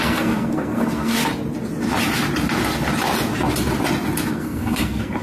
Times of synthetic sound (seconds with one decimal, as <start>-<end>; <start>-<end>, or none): 0.0-1.2; 4.3-5.2